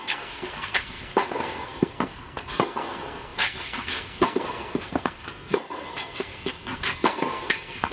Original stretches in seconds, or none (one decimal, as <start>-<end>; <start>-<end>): none